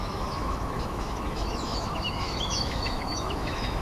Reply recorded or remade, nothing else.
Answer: remade